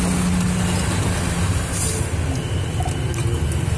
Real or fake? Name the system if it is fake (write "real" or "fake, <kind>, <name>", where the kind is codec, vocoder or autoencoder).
real